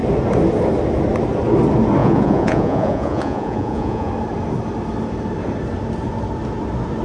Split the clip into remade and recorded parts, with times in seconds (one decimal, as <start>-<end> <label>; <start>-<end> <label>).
0.0-2.0 recorded; 2.0-4.1 remade; 4.1-7.0 recorded